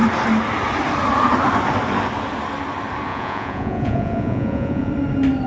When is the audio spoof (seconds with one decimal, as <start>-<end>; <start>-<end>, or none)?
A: 3.1-4.9